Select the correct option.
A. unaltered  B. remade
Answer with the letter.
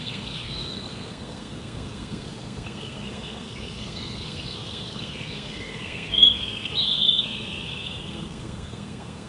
B